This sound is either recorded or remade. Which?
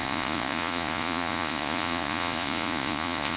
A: remade